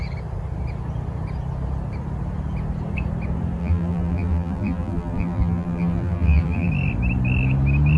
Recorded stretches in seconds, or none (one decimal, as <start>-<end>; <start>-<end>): 0.0-3.6; 6.7-8.0